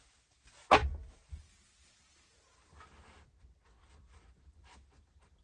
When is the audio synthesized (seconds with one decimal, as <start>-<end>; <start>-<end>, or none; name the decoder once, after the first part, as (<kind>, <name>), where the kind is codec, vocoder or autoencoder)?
none